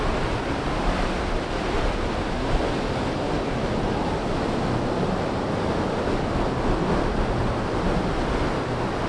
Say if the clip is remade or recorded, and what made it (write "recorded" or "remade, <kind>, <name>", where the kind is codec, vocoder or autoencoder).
recorded